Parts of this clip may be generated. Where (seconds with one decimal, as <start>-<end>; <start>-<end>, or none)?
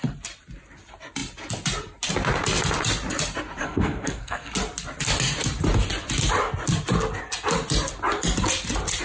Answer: 3.6-4.5